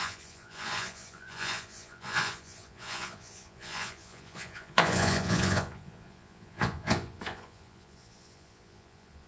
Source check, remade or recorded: remade